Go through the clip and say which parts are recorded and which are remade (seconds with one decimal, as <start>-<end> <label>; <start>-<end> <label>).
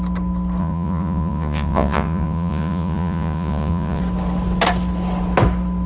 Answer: 0.0-0.6 recorded; 0.6-4.0 remade; 4.0-5.9 recorded